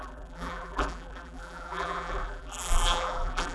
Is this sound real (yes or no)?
no